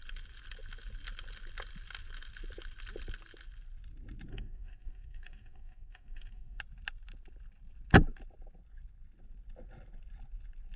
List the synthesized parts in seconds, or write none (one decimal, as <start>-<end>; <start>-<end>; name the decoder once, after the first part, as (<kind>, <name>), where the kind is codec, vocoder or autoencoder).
4.3-6.6 (codec, DAC)